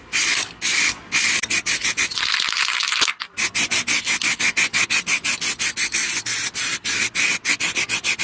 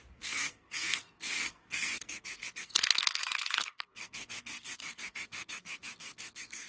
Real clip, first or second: first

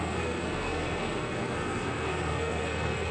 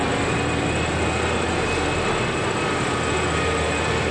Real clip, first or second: second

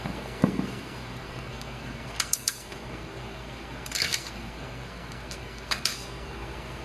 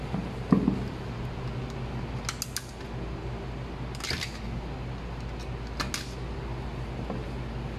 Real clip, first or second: second